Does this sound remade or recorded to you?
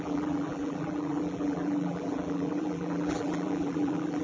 remade